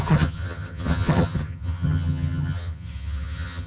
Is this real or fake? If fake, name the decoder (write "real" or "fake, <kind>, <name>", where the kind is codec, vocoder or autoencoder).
fake, vocoder, HiFi-GAN